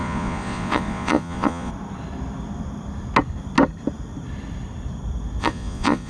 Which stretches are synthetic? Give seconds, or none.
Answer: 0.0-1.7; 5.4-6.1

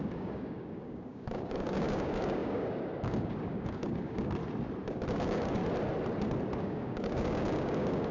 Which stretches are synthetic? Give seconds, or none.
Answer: 0.0-4.4; 5.1-5.6; 6.6-8.1

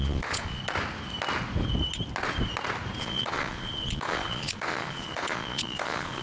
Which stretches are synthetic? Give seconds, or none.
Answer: 0.0-0.6; 3.0-6.2

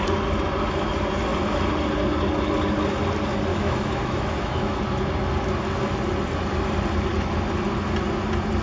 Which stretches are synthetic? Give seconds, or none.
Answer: 3.5-4.8

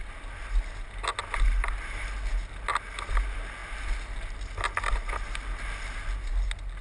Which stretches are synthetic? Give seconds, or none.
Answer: none

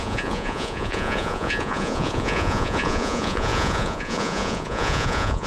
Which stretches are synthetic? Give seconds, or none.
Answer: 0.0-5.5

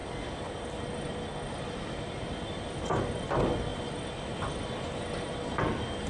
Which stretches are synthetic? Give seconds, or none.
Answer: none